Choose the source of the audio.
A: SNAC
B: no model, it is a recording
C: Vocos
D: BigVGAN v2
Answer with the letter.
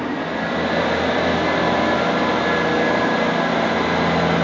B